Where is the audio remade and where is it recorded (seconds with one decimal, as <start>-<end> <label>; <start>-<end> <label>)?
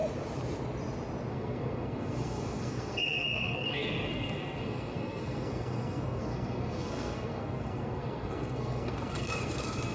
0.0-1.3 recorded; 1.3-9.9 remade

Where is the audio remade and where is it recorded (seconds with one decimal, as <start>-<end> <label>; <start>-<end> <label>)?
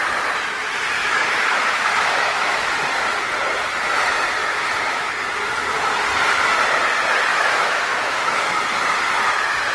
0.0-1.0 recorded; 1.0-2.7 remade; 2.7-4.4 recorded; 4.4-5.1 remade; 5.1-7.3 recorded; 7.3-8.5 remade; 8.5-9.7 recorded